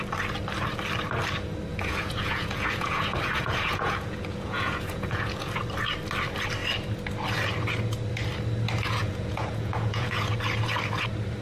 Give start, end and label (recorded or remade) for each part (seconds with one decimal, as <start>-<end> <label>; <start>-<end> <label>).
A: 0.0-1.7 recorded; 1.7-5.6 remade; 5.6-9.0 recorded; 9.0-10.3 remade; 10.3-11.4 recorded